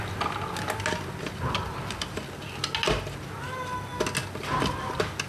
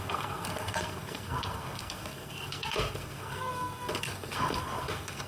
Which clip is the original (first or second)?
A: first